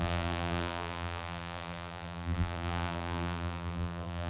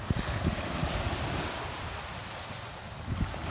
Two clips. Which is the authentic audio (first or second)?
second